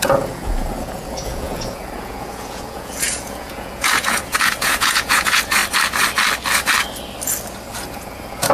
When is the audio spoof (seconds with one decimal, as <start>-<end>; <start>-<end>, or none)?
0.0-5.6; 7.9-8.5